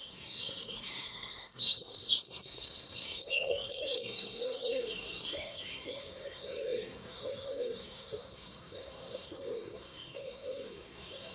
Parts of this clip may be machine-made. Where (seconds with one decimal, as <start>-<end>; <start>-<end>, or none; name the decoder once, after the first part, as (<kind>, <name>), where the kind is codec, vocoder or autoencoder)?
0.0-11.3 (codec, SNAC)